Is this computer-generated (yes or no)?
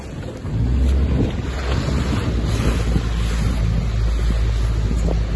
no